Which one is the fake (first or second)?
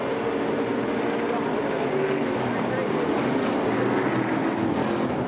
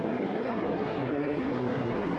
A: second